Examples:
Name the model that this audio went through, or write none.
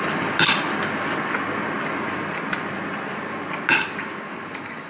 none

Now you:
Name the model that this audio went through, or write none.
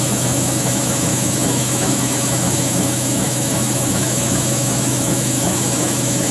autoencoder, DAC-VAE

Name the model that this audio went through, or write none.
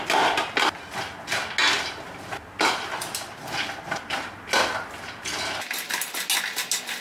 none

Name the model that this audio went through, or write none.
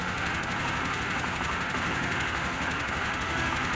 autoencoder, DAC-VAE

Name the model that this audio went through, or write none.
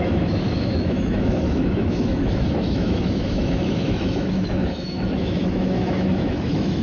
autoencoder, DAC-VAE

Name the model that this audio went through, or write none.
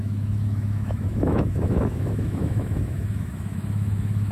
autoencoder, DAC-VAE